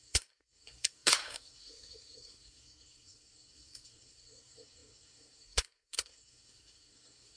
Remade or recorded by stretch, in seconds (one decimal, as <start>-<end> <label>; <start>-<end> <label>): 0.0-7.4 remade